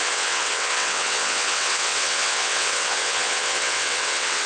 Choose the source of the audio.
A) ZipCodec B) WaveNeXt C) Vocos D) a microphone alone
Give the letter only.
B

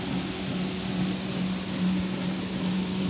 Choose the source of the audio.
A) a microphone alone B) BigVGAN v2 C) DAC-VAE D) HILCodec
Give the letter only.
A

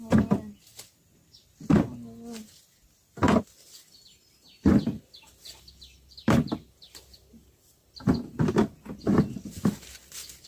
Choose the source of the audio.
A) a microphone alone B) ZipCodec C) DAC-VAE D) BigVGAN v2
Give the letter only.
A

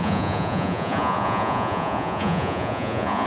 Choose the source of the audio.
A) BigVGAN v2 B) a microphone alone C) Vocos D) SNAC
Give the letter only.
C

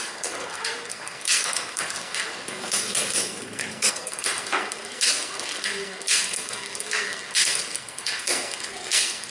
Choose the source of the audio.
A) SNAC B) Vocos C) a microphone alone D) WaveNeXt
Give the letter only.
A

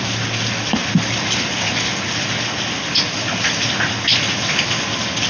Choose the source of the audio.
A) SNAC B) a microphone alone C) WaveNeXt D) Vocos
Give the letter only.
B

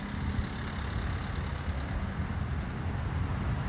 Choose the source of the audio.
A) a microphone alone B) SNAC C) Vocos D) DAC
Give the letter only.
A